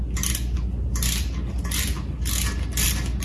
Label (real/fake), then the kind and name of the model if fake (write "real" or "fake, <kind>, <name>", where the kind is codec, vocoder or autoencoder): real